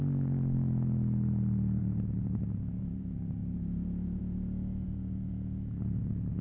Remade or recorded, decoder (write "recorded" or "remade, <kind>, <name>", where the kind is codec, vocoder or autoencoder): remade, vocoder, Vocos